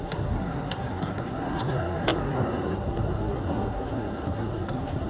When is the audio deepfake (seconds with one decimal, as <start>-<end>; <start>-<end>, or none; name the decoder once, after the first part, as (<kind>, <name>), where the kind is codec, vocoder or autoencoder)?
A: 0.0-5.1 (codec, SNAC)